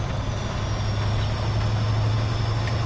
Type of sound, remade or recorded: recorded